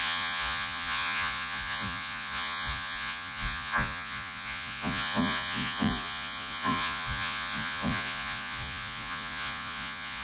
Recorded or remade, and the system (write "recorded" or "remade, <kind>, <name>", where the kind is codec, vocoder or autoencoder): remade, vocoder, Vocos